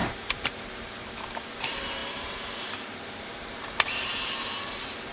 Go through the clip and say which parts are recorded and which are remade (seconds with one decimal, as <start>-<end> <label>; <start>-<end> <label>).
0.0-5.1 remade

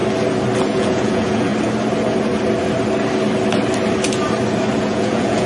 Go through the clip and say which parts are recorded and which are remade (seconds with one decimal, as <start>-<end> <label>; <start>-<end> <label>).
0.0-0.6 recorded; 0.6-1.5 remade; 1.5-4.8 recorded; 4.8-5.5 remade

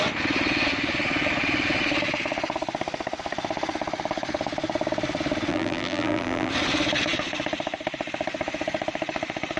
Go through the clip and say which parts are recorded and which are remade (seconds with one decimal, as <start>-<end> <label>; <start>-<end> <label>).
0.0-5.5 recorded; 5.5-6.5 remade; 6.5-9.6 recorded

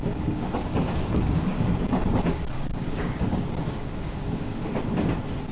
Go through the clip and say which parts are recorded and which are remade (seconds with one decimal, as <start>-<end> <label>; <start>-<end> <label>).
0.0-4.6 remade; 4.6-5.5 recorded

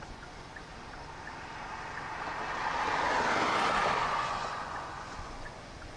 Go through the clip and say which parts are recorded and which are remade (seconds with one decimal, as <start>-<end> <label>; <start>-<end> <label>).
0.0-0.7 remade; 0.7-4.0 recorded; 4.0-6.0 remade

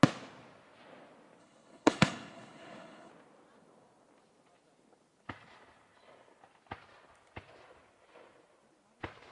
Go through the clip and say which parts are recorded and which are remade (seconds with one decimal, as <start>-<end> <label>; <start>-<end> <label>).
0.0-1.4 recorded; 1.4-3.1 remade; 3.1-9.3 recorded

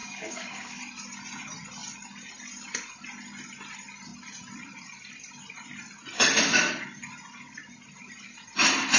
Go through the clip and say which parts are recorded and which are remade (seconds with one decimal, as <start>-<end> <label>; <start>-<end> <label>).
0.0-0.8 remade; 0.8-9.0 recorded

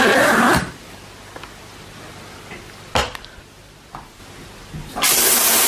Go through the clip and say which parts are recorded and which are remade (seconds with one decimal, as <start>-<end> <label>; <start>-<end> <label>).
0.0-5.7 recorded